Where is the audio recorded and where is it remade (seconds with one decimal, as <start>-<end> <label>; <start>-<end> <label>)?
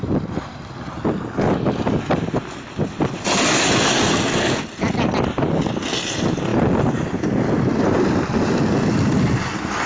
0.0-9.9 recorded